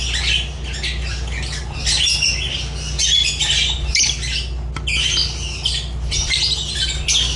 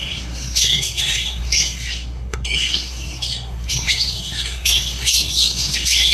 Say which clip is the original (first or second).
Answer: first